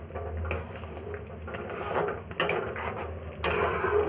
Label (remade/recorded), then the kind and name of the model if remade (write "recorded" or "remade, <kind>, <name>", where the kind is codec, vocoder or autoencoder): recorded